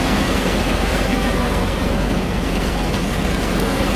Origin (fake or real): fake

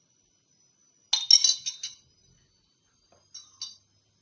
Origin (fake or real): real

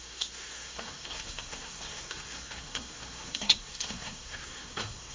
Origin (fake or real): fake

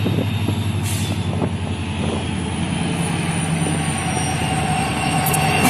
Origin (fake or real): real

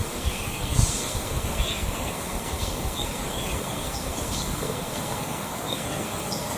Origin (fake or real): fake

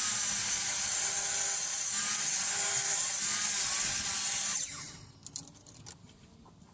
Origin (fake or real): real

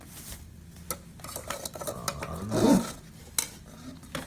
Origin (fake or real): real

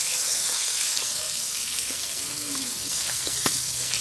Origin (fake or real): fake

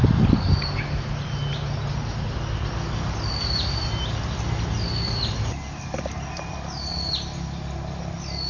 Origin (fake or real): real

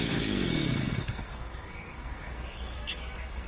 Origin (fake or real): fake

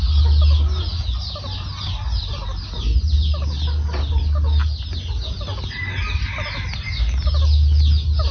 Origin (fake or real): real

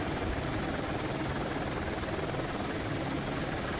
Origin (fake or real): real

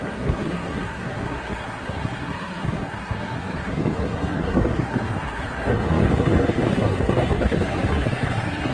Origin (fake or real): fake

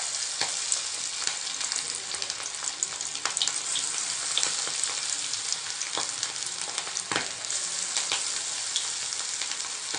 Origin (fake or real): real